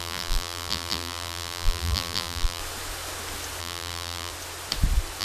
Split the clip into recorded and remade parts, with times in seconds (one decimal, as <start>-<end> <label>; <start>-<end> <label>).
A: 0.0-2.6 remade; 2.6-3.6 recorded; 3.6-4.3 remade; 4.3-5.2 recorded